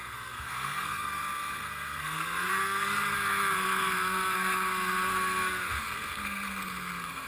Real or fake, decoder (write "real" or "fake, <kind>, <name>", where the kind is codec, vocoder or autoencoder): fake, codec, SNAC